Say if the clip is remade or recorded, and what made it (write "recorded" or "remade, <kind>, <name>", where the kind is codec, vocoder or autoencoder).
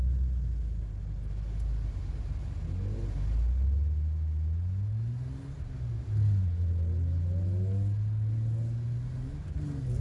recorded